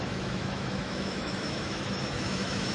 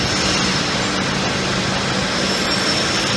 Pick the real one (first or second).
second